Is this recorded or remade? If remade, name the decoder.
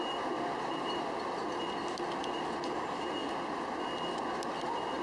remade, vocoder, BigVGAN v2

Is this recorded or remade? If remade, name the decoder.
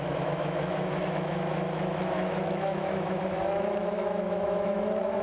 remade, autoencoder, DAC-VAE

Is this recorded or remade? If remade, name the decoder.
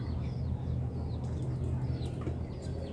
recorded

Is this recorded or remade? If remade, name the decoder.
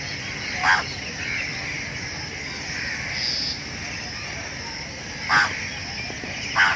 recorded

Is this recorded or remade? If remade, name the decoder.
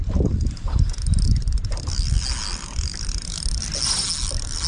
recorded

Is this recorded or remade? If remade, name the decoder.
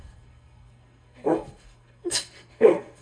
remade, codec, SNAC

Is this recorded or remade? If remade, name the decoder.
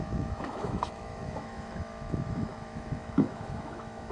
remade, autoencoder, DAC-VAE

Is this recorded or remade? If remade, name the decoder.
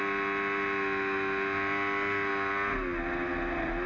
recorded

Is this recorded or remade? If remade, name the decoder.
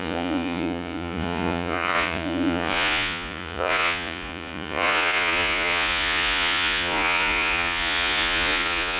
remade, vocoder, Vocos